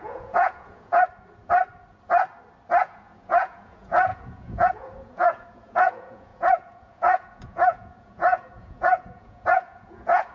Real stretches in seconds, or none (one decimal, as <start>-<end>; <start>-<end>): 0.9-2.8